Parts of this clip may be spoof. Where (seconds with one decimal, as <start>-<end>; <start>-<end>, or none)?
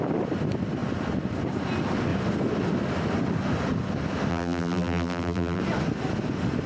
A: 4.3-5.6